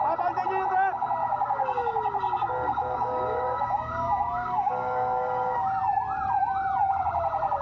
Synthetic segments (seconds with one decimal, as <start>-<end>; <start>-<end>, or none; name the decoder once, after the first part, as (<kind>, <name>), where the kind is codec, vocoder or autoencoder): 1.2-5.8 (codec, DAC)